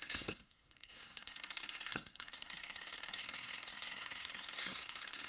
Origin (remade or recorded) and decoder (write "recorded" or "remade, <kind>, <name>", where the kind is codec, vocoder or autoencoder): remade, codec, SNAC